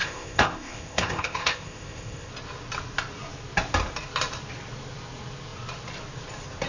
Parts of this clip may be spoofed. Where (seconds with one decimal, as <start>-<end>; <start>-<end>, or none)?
0.0-2.3